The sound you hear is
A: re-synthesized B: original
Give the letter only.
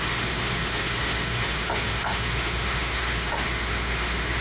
A